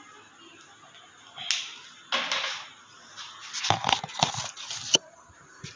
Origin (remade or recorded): recorded